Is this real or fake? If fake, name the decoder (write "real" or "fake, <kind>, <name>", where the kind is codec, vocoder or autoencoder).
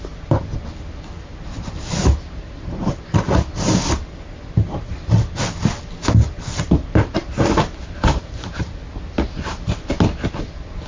real